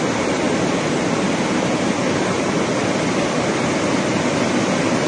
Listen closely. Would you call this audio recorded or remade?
recorded